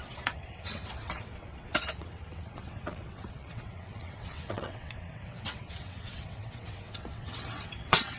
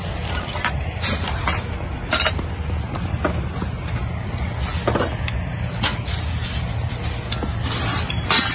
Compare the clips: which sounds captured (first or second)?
second